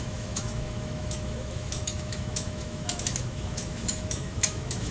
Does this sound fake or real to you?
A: fake